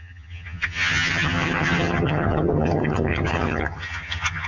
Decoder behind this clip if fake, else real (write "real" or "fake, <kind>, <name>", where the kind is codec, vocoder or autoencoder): fake, vocoder, HiFi-GAN